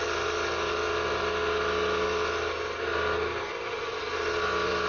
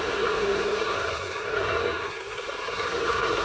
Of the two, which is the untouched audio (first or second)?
first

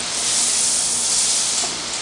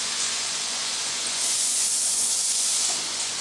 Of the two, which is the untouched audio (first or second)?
first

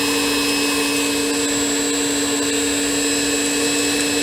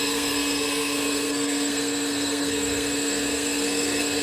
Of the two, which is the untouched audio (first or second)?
first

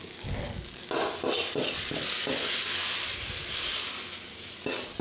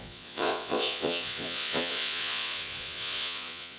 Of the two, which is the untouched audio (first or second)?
first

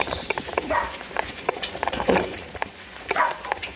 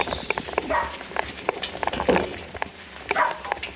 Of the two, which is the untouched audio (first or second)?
second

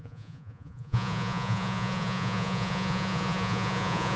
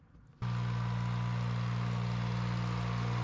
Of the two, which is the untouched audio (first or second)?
second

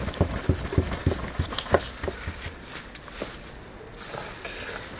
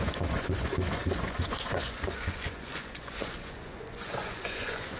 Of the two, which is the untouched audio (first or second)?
first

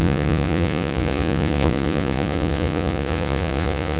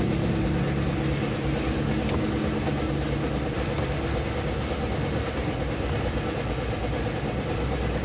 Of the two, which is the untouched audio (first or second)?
second